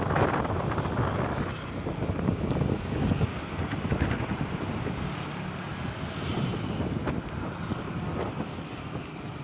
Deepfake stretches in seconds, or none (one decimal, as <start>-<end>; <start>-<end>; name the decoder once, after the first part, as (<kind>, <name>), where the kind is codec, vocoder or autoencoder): none